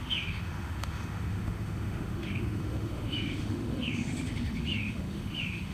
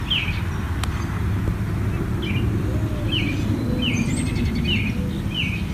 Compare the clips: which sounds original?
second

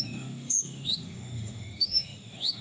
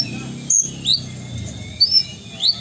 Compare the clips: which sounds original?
second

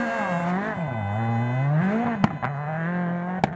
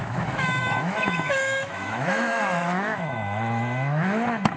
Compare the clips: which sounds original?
first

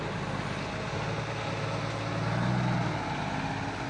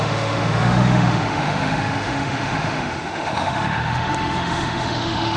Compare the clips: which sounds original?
first